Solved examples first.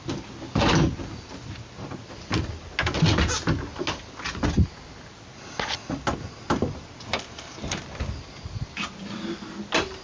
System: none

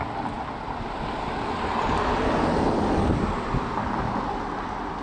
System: none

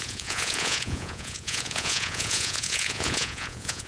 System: vocoder, Vocos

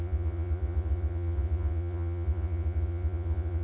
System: vocoder, Vocos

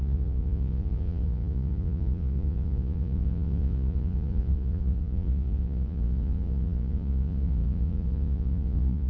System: vocoder, Vocos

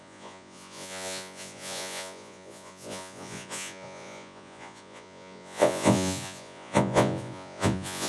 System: vocoder, Vocos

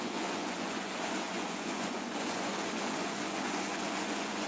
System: vocoder, Vocos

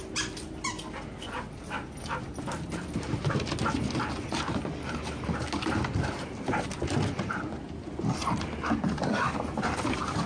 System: none